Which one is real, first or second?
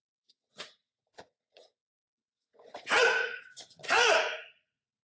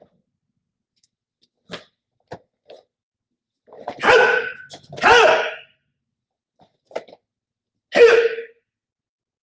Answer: second